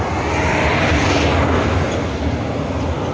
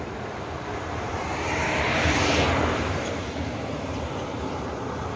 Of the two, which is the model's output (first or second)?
second